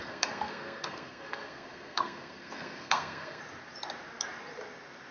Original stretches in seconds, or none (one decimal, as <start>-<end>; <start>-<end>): 3.4-5.1